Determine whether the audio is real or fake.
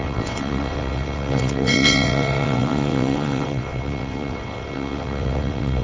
fake